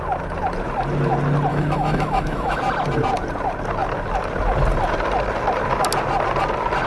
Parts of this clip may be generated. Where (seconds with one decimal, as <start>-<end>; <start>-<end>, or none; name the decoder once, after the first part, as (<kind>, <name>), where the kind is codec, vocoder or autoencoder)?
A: 1.5-2.6 (autoencoder, DAC-VAE)